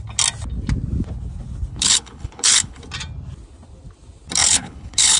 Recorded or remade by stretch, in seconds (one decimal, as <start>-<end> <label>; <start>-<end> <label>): 0.0-1.7 recorded; 1.7-2.8 remade; 2.8-4.4 recorded; 4.4-5.2 remade